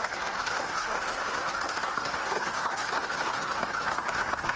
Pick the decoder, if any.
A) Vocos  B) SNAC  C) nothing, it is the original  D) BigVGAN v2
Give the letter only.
B